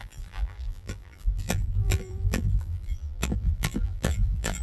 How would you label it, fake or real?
fake